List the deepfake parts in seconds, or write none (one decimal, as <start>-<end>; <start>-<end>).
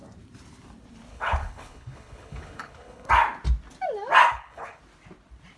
1.1-3.1; 4.3-4.8